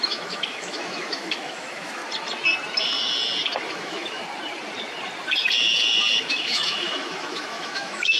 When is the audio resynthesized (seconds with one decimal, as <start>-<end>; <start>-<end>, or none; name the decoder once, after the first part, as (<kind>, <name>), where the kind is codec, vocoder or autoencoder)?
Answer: 0.0-2.0 (autoencoder, DAC-VAE); 3.7-4.2; 6.3-8.2